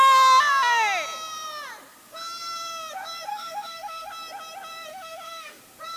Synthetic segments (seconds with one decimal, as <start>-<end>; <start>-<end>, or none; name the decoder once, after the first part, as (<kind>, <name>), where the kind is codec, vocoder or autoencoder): 3.3-4.1 (autoencoder, DAC-VAE); 4.9-5.6